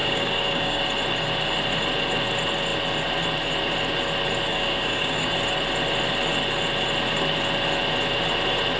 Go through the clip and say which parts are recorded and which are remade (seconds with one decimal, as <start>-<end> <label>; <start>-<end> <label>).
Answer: 0.0-0.8 remade; 0.8-4.5 recorded; 4.5-5.3 remade; 5.3-8.8 recorded